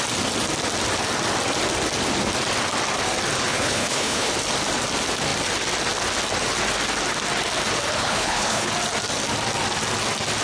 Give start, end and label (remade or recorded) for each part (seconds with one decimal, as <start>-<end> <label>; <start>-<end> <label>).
0.0-3.5 recorded; 3.5-4.3 remade; 4.3-8.0 recorded; 8.0-8.7 remade; 8.7-10.4 recorded

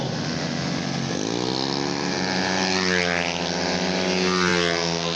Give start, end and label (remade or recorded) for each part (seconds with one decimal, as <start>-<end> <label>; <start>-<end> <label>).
0.0-5.2 recorded

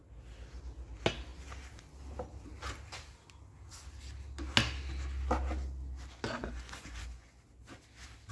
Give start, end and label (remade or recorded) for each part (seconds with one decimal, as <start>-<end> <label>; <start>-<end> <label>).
0.0-6.4 recorded; 6.4-7.4 remade; 7.4-8.3 recorded

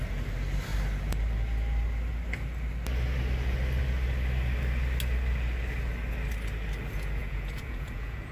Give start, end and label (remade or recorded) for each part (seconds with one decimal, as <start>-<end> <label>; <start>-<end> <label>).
0.0-7.2 recorded; 7.2-8.3 remade